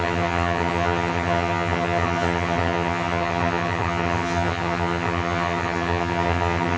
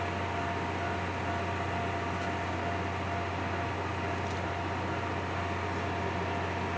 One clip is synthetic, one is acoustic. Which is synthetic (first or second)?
first